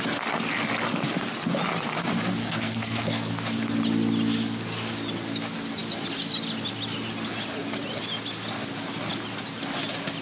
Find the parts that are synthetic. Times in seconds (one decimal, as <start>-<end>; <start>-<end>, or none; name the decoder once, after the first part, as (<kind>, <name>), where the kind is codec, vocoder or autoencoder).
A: 2.4-3.3 (codec, SNAC)